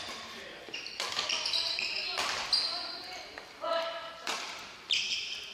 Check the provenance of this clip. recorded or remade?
remade